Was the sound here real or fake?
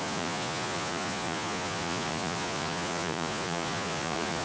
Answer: fake